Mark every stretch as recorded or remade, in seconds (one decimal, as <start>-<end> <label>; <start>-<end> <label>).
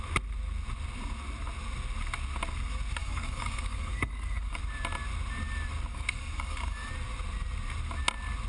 0.0-3.0 recorded; 3.0-4.6 remade; 4.6-5.9 recorded; 5.9-6.9 remade; 6.9-8.5 recorded